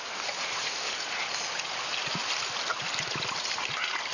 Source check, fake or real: real